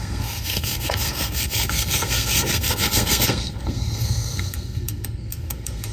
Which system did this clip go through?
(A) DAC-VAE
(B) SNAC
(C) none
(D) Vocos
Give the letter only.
B